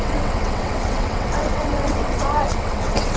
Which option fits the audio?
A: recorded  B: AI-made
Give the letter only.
B